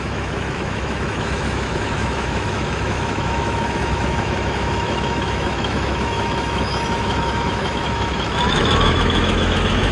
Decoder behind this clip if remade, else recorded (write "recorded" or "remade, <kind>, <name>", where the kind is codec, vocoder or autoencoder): remade, autoencoder, DAC-VAE